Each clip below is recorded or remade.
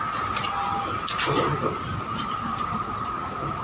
recorded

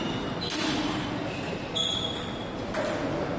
recorded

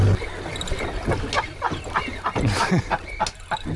recorded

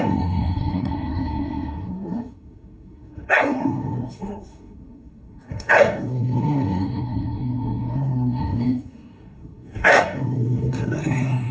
remade